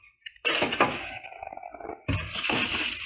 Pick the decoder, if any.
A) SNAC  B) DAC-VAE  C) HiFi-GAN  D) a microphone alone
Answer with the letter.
D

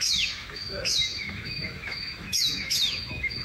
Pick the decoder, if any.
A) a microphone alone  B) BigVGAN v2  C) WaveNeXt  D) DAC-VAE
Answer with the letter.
D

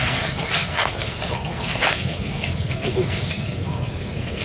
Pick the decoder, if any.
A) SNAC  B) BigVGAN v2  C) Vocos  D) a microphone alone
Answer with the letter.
A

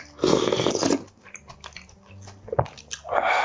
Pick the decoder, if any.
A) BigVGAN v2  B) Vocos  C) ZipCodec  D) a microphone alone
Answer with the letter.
D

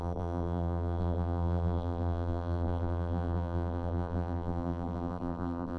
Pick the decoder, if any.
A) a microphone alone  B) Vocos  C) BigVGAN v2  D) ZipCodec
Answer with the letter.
C